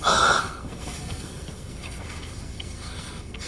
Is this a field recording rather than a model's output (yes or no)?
no